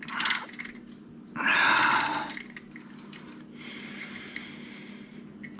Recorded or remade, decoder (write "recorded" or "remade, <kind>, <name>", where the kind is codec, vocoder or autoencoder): recorded